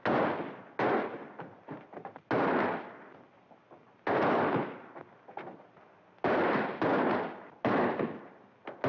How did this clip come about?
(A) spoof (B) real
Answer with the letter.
B